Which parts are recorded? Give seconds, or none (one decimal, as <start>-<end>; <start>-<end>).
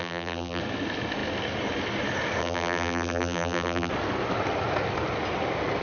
0.6-2.4; 3.9-5.8